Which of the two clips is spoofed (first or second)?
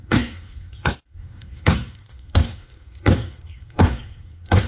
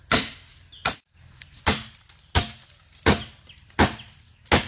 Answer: first